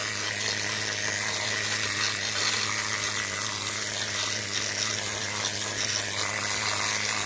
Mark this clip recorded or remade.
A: recorded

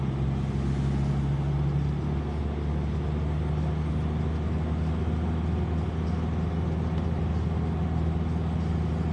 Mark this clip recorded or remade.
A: recorded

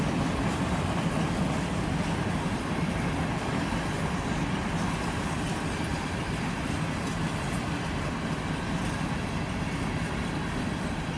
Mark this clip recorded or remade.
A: recorded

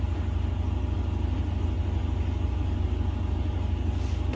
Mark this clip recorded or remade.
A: recorded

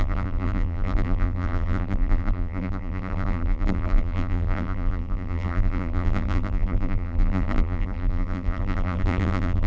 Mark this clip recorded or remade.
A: remade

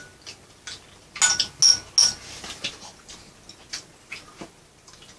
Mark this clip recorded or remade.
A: recorded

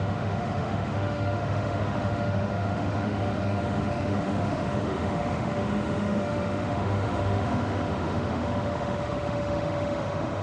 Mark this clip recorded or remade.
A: remade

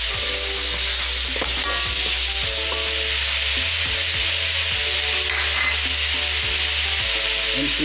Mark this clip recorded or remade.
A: recorded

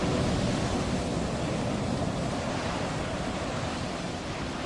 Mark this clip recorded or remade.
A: recorded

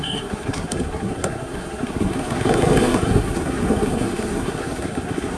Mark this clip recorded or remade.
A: remade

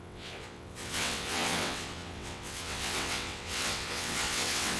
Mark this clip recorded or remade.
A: remade